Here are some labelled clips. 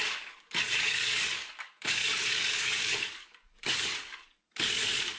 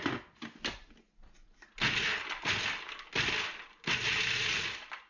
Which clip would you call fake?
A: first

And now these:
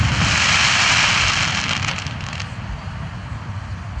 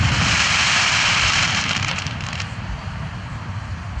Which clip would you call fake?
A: second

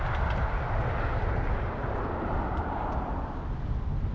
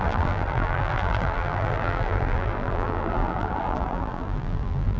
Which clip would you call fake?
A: second